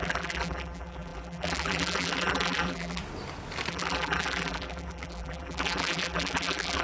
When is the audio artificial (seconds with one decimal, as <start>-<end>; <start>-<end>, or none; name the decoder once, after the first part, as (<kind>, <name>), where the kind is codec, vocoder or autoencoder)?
0.0-3.0 (vocoder, BigVGAN v2); 3.7-6.8